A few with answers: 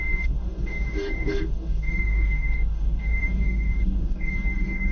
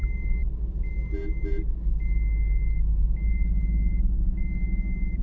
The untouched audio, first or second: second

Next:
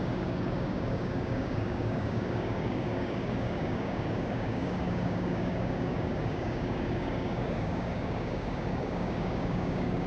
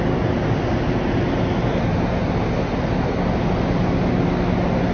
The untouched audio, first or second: second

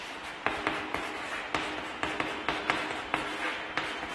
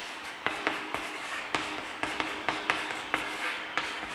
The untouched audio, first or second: first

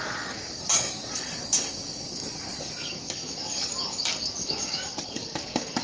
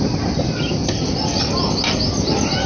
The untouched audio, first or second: second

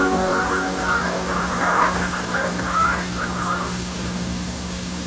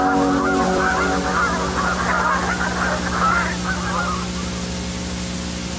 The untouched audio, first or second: second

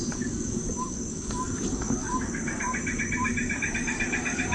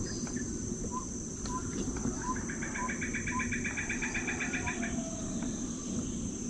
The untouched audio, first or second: second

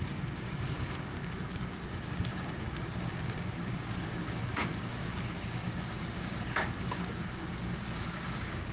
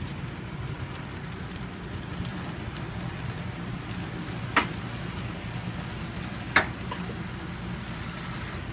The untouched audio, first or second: second